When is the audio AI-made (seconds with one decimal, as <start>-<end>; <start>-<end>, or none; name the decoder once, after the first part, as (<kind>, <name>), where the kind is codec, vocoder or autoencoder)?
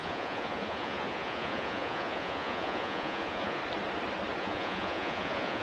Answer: 0.0-3.6 (vocoder, Vocos); 4.4-5.6